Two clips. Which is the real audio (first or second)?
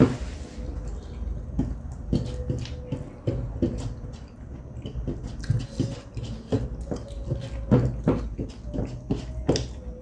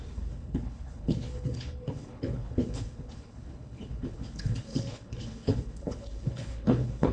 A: first